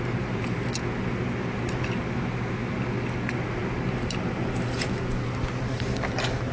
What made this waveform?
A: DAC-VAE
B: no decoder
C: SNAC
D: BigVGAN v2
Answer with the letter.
B